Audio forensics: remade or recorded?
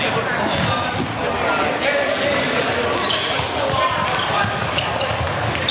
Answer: recorded